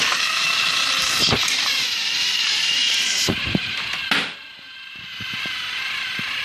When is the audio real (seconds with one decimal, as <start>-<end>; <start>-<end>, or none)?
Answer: 4.0-4.6